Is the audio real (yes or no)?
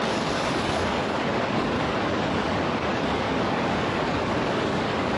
no